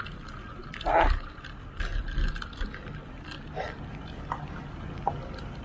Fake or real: real